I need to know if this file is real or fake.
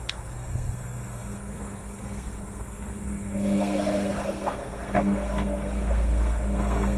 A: fake